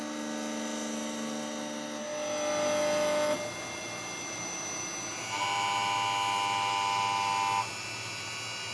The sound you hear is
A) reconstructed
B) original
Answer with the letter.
B